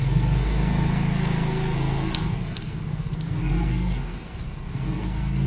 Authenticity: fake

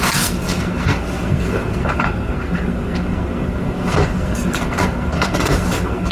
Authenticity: fake